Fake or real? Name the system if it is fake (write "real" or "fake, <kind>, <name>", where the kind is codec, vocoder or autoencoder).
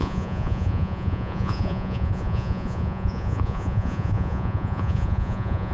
fake, vocoder, Vocos